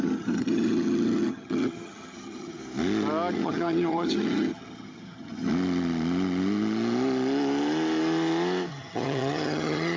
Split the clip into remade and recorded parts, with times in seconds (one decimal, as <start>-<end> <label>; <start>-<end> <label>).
0.0-2.6 remade; 2.6-3.3 recorded; 3.3-5.5 remade; 5.5-8.7 recorded; 8.7-10.0 remade

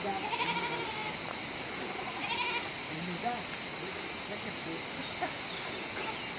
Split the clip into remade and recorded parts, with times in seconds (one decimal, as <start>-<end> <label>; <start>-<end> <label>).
0.0-6.4 recorded